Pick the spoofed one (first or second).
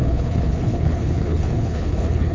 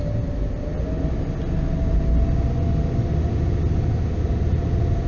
first